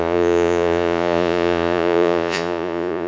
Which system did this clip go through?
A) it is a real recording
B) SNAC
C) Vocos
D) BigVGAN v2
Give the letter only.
C